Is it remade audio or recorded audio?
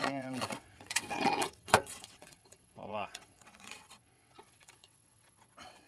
remade